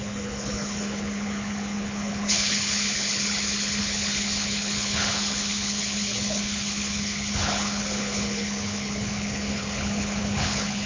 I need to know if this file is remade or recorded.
remade